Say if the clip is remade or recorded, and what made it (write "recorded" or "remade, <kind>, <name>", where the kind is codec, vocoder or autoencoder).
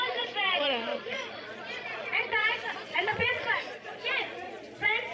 remade, vocoder, Vocos